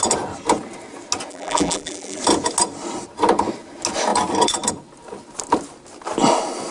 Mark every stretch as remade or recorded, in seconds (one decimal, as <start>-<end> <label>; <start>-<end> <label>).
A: 0.0-1.3 recorded; 1.3-2.2 remade; 2.2-6.7 recorded